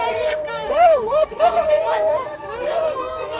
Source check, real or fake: fake